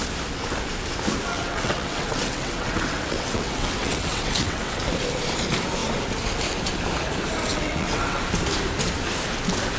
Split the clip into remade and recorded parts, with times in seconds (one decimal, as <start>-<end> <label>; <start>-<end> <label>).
0.0-1.3 recorded; 1.3-4.8 remade; 4.8-7.5 recorded; 7.5-8.2 remade; 8.2-9.8 recorded